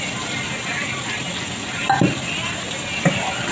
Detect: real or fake real